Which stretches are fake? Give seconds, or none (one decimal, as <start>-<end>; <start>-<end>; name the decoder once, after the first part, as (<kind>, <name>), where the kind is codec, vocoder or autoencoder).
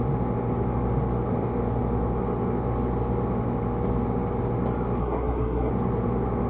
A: 5.0-5.7 (codec, SNAC)